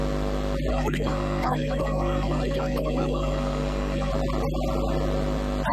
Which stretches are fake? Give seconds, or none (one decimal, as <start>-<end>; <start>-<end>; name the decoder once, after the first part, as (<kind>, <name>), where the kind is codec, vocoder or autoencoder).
0.7-4.1 (codec, SNAC)